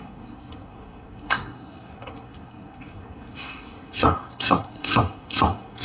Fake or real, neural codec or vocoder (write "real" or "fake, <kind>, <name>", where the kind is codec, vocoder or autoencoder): fake, codec, SNAC